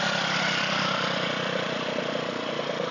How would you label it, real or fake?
real